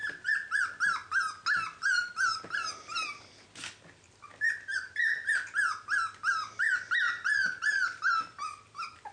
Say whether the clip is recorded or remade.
recorded